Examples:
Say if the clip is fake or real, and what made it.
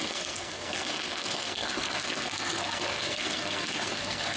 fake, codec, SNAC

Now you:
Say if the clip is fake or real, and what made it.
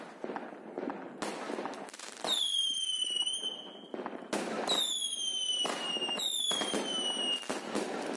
real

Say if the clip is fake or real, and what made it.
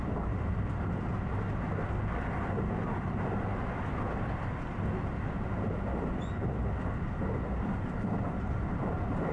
real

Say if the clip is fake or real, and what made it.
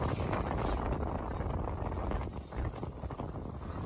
real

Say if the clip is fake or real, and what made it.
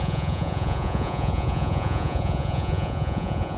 fake, vocoder, Vocos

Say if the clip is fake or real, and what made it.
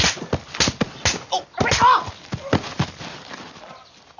real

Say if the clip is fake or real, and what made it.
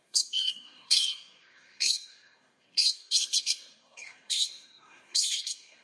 fake, codec, SNAC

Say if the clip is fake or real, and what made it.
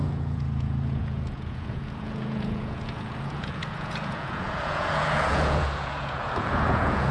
fake, vocoder, Vocos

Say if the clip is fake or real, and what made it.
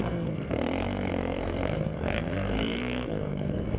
fake, codec, SNAC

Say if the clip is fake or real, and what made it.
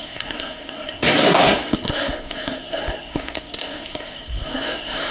fake, codec, SNAC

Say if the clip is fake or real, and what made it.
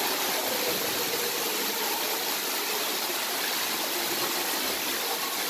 real